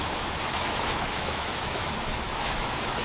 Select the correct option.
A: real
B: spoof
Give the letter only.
B